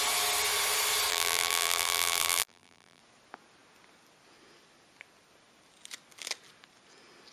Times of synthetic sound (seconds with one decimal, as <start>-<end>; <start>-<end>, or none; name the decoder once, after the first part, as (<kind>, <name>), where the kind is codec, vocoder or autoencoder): 1.1-3.0 (vocoder, BigVGAN v2)